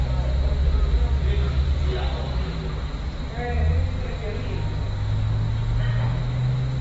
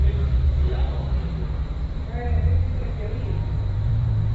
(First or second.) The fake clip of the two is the second